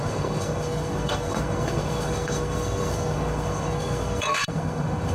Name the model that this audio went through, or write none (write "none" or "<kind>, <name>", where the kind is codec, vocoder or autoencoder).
codec, SNAC